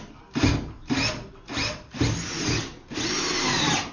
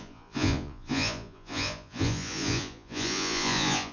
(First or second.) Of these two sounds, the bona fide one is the first